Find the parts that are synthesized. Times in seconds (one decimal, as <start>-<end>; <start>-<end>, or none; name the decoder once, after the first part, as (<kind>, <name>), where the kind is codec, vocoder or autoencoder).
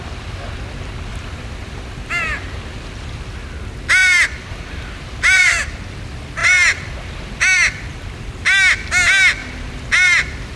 1.1-2.1 (vocoder, BigVGAN v2); 4.0-5.6; 6.4-8.9; 9.4-10.6